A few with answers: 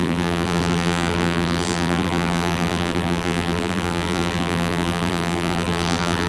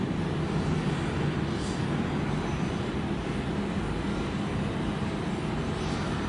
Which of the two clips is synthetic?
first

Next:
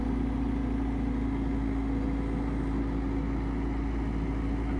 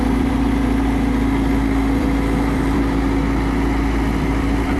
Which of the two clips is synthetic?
second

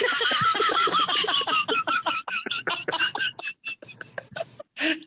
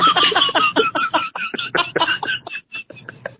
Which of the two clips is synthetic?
first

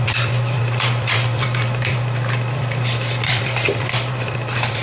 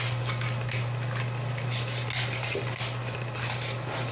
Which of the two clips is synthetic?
first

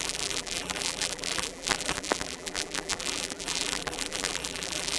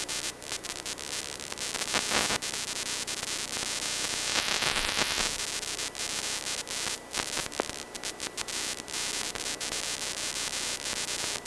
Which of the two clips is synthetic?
first